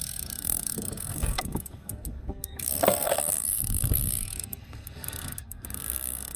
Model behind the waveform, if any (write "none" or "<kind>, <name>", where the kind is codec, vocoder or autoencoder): codec, SNAC